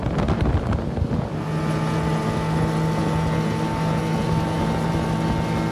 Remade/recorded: recorded